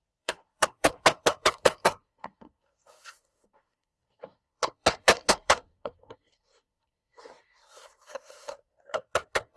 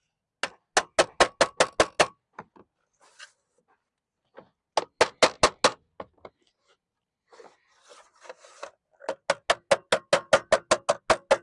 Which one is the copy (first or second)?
first